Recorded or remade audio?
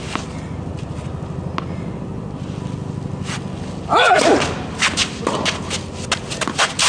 recorded